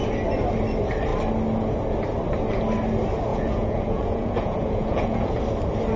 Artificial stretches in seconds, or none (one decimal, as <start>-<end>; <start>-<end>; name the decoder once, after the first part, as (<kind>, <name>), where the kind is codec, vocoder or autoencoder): 3.3-5.4 (vocoder, Vocos)